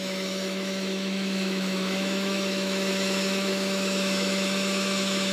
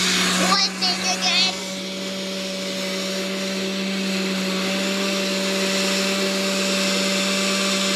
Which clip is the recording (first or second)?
second